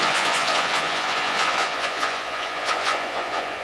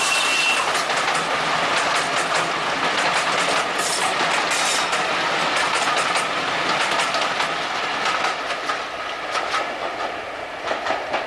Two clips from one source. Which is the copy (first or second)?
first